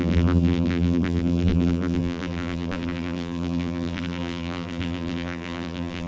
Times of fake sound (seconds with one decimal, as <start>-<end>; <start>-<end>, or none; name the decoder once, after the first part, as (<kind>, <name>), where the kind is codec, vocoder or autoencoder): 0.0-6.1 (vocoder, BigVGAN v2)